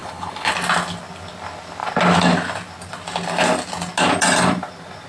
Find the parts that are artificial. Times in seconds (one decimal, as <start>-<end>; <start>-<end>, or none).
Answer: 0.0-0.5